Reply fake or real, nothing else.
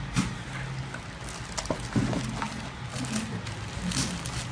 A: real